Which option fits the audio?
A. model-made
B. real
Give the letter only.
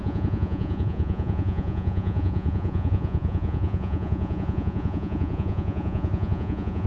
A